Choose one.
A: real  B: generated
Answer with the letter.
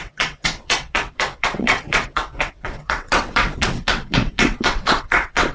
B